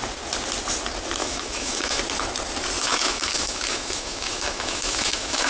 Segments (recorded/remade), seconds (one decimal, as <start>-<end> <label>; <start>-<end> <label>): 0.0-1.2 recorded; 1.2-2.0 remade; 2.0-2.8 recorded; 2.8-5.5 remade